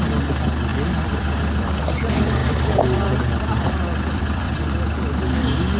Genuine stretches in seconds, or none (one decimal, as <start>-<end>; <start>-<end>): 0.0-0.7; 1.8-2.4; 4.6-5.8